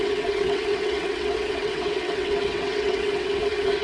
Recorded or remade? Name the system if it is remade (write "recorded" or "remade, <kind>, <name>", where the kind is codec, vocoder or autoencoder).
remade, vocoder, WaveNeXt